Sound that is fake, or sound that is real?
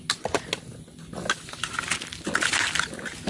real